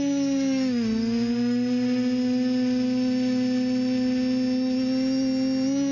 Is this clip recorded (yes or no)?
yes